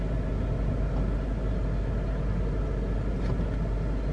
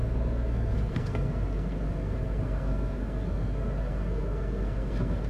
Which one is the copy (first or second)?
second